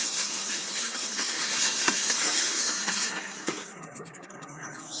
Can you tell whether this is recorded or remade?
remade